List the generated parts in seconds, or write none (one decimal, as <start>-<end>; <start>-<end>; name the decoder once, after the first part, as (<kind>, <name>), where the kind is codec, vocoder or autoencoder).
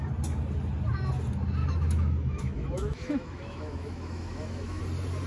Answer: 1.6-4.8 (autoencoder, DAC-VAE)